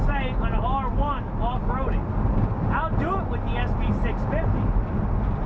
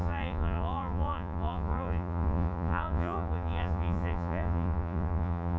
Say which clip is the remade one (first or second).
second